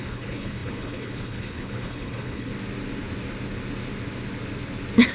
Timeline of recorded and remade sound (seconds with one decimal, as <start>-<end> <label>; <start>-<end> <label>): 0.0-2.5 remade; 2.5-5.1 recorded